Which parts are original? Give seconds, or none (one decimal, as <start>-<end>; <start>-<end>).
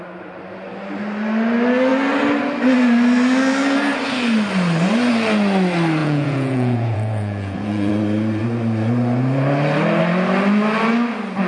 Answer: 0.0-6.0; 7.9-11.5